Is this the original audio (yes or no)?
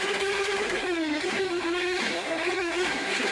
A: no